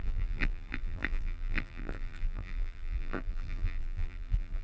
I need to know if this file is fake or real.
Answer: fake